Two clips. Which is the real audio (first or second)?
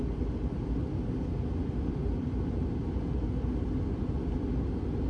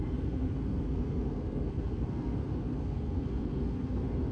first